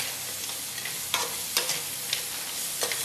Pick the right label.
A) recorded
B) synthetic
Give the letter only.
A